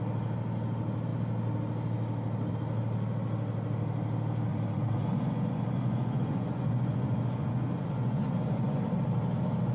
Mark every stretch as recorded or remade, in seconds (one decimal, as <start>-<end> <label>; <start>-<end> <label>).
0.0-4.5 recorded; 4.5-8.8 remade; 8.8-9.7 recorded